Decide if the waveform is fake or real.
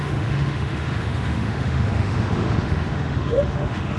fake